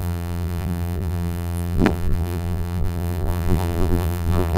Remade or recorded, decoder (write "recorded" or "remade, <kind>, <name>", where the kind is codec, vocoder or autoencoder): remade, vocoder, BigVGAN v2